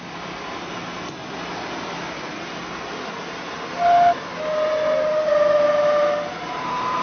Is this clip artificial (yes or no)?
no